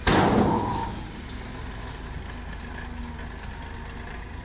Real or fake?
real